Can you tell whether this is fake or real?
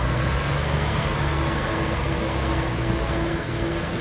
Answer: fake